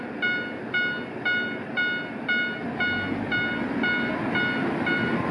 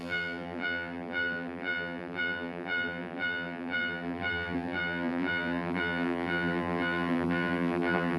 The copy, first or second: second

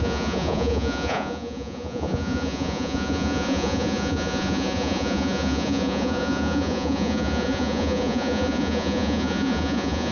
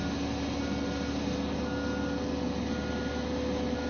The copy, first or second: first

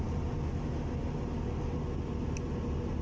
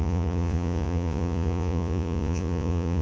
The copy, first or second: second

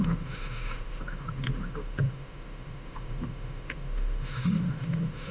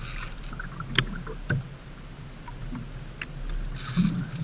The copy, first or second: first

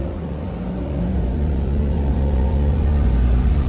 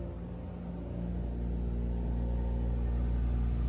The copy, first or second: first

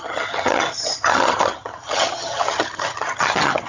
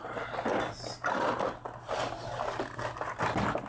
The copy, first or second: first